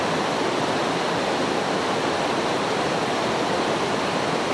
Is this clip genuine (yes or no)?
yes